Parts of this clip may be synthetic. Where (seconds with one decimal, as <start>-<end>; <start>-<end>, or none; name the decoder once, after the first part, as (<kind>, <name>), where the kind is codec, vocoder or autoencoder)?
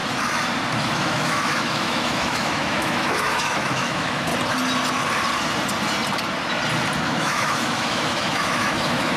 0.8-4.3 (autoencoder, DAC-VAE); 7.0-9.2